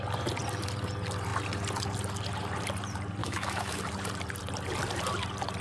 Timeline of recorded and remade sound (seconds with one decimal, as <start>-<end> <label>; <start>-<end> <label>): 0.0-3.2 recorded; 3.2-3.8 remade; 3.8-5.6 recorded